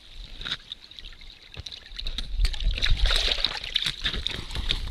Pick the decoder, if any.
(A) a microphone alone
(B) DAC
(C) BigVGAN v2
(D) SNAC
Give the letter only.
A